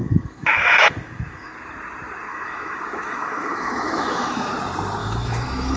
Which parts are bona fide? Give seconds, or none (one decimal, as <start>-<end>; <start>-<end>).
1.5-2.3; 4.5-5.0